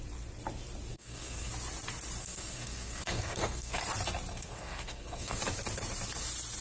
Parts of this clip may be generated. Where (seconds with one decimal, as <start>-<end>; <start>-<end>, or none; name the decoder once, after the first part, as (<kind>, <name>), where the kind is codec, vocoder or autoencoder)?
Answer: 0.9-1.5 (codec, SNAC); 2.2-3.8; 4.3-5.4